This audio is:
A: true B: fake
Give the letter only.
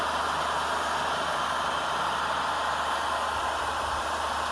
A